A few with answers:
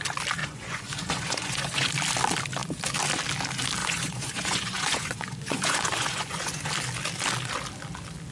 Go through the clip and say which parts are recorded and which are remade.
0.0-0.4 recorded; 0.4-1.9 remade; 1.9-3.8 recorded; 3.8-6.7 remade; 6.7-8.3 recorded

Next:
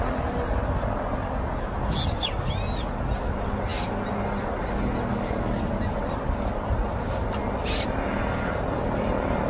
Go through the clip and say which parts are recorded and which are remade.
0.0-5.1 recorded; 5.1-5.6 remade; 5.6-9.5 recorded

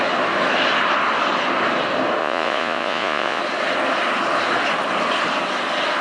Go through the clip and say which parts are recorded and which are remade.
0.0-2.2 recorded; 2.2-3.4 remade; 3.4-6.0 recorded

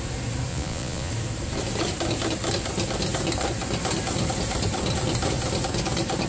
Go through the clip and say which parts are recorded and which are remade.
0.0-0.5 recorded; 0.5-1.1 remade; 1.1-6.3 recorded

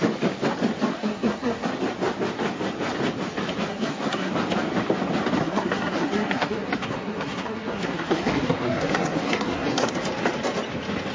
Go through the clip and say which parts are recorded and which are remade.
0.0-0.9 recorded; 0.9-1.7 remade; 1.7-3.7 recorded; 3.7-4.3 remade; 4.3-5.4 recorded; 5.4-9.9 remade; 9.9-11.1 recorded

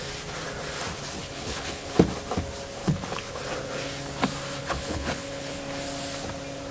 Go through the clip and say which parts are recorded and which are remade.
0.0-1.2 recorded; 1.2-1.9 remade; 1.9-2.8 recorded; 2.8-3.4 remade; 3.4-4.6 recorded; 4.6-5.6 remade; 5.6-6.7 recorded

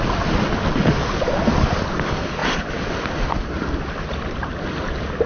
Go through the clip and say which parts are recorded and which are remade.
0.0-5.3 recorded